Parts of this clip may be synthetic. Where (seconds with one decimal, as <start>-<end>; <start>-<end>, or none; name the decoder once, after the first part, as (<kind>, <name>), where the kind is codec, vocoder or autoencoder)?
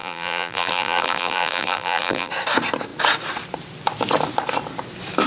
0.0-2.3 (vocoder, BigVGAN v2)